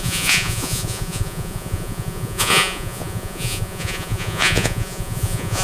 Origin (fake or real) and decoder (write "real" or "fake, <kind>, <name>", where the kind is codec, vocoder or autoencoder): fake, vocoder, Vocos